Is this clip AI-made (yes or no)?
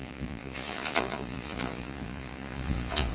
yes